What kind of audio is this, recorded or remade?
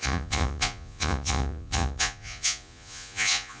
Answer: remade